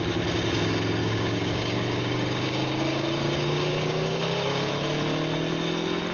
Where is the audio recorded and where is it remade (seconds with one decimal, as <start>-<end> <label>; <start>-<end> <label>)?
0.0-1.0 recorded; 1.0-4.7 remade; 4.7-6.1 recorded